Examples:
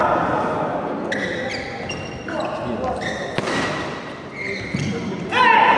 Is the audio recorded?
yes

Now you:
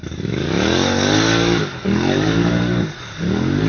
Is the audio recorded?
no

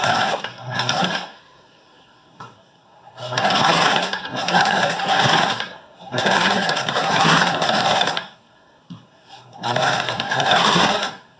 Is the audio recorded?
no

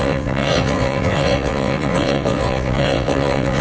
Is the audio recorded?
no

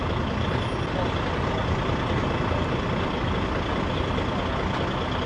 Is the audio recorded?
yes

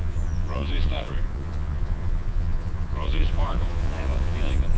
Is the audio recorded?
no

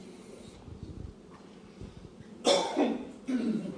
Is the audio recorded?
yes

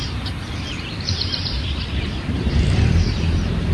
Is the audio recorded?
no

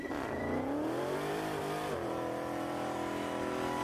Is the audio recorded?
no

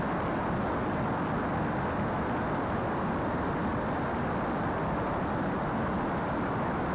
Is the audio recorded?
yes